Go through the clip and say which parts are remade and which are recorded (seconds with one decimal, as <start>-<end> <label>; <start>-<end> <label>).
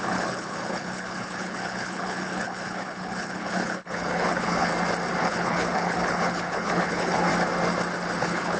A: 0.0-4.7 remade; 4.7-5.2 recorded; 5.2-7.3 remade; 7.3-8.2 recorded; 8.2-8.6 remade